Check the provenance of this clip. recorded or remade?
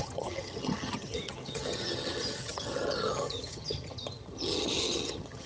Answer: remade